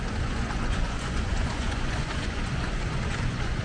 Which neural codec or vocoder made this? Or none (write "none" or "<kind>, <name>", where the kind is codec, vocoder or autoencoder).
vocoder, Vocos